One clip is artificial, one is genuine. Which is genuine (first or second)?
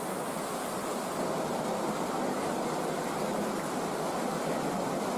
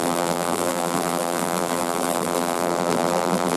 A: first